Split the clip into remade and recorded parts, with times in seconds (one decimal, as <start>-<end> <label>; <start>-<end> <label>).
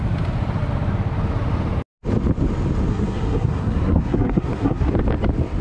0.0-2.9 recorded; 2.9-4.9 remade; 4.9-5.6 recorded